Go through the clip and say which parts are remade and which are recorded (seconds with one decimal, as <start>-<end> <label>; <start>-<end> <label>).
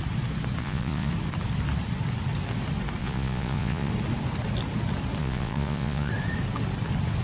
0.0-0.6 recorded; 0.6-1.1 remade; 1.1-3.0 recorded; 3.0-3.9 remade; 3.9-5.2 recorded; 5.2-6.1 remade; 6.1-7.2 recorded